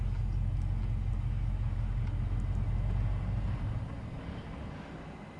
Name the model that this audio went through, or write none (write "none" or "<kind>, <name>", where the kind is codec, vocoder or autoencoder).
none